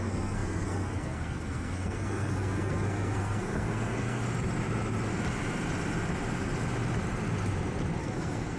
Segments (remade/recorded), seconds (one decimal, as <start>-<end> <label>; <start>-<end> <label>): 0.0-4.2 remade; 4.2-8.0 recorded; 8.0-8.6 remade

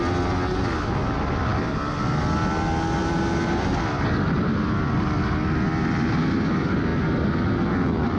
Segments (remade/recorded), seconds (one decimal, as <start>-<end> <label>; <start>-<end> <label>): 0.0-8.2 recorded

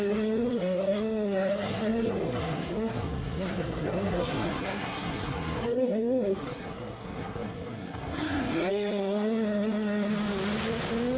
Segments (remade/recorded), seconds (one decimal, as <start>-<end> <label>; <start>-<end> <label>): 0.0-10.1 remade; 10.1-11.2 recorded

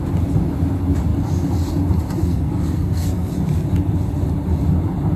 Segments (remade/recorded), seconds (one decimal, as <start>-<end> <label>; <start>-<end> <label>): 0.0-2.2 recorded; 2.2-3.3 remade; 3.3-5.2 recorded

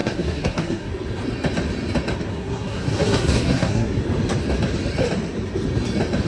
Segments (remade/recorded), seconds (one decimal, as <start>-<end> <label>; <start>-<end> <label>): 0.0-0.9 remade; 0.9-2.3 recorded; 2.3-4.0 remade; 4.0-6.3 recorded

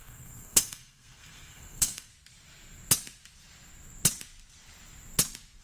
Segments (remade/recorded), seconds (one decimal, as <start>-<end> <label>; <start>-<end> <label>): 0.0-2.1 remade; 2.1-5.6 recorded